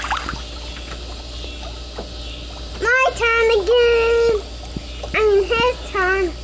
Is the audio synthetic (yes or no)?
no